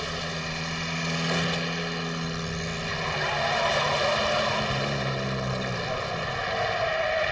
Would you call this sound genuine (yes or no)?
yes